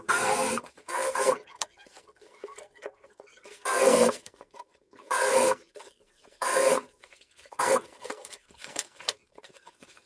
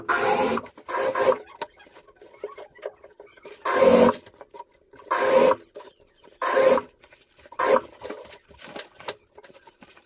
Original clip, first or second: second